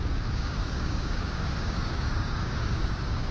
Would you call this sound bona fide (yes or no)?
no